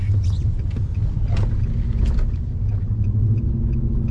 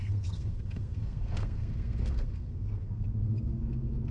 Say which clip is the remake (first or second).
second